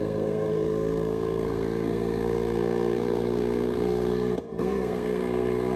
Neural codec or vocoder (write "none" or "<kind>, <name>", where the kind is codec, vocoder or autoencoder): codec, SNAC